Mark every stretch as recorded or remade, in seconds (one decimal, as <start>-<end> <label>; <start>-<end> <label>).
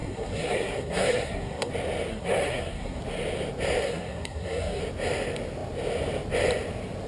0.0-1.7 remade; 1.7-2.1 recorded; 2.1-3.0 remade; 3.0-3.8 recorded; 3.8-4.8 remade; 4.8-7.1 recorded